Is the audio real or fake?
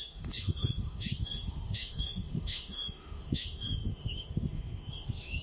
fake